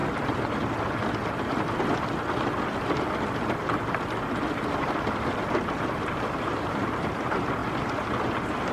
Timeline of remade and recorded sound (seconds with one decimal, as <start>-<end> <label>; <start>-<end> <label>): 0.0-4.7 recorded; 4.7-7.6 remade; 7.6-8.7 recorded